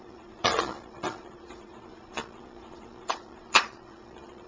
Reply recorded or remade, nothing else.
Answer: remade